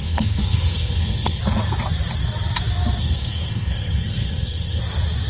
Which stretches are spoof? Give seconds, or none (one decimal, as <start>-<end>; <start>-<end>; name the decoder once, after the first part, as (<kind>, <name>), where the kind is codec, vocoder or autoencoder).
0.0-1.4 (codec, SNAC); 3.0-4.8